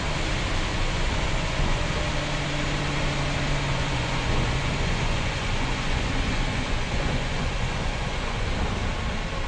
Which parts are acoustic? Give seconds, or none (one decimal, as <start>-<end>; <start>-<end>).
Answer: 0.0-0.7; 1.9-3.7; 8.5-9.5